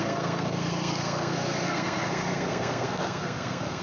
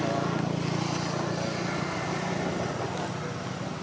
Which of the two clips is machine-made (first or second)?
first